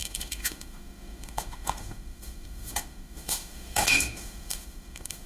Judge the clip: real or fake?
fake